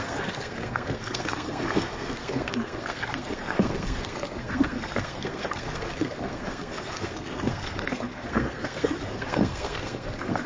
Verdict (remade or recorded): remade